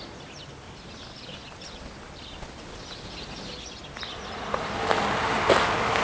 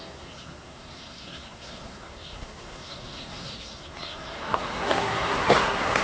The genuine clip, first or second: first